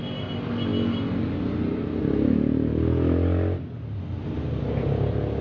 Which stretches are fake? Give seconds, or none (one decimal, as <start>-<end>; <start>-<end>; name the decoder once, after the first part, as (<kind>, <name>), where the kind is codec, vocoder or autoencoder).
none